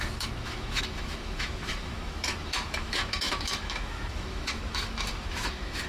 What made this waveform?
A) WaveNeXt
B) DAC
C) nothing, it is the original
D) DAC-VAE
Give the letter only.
D